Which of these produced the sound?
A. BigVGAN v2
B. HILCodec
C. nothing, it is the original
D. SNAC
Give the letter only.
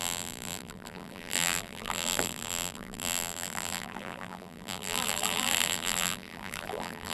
A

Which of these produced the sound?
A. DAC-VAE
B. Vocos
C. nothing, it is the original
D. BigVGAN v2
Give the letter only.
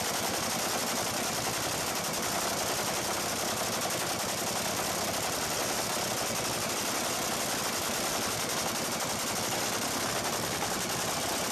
C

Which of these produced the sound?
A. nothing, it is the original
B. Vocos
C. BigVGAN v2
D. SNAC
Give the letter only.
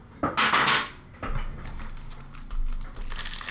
A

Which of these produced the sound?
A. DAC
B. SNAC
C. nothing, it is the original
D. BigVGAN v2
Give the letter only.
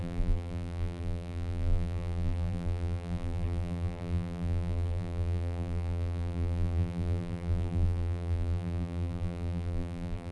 D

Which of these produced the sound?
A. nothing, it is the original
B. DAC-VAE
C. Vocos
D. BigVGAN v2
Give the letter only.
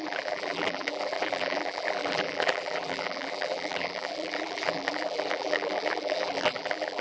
D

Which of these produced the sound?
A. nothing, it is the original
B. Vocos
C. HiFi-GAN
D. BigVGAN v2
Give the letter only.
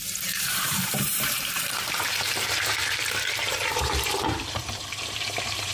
D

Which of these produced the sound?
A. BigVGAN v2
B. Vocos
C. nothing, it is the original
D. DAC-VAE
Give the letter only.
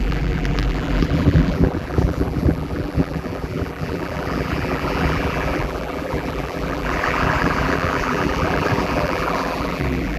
A